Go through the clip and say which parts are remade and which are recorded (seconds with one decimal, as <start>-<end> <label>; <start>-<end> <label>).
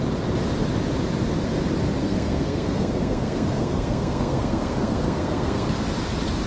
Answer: 0.0-2.0 recorded; 2.0-5.7 remade; 5.7-6.5 recorded